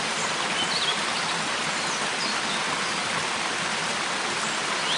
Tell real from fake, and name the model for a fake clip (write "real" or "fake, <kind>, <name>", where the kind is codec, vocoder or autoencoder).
real